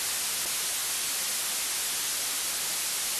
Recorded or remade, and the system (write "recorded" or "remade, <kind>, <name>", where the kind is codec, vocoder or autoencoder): recorded